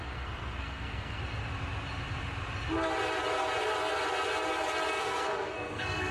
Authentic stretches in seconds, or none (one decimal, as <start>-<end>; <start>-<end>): 1.2-4.9